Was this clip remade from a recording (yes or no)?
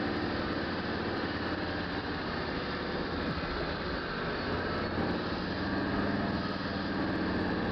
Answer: no